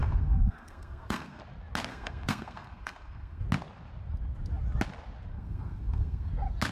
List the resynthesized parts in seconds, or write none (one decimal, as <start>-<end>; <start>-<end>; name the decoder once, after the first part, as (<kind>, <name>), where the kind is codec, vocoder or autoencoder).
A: 0.0-1.4 (codec, SNAC); 1.9-3.4; 5.3-6.3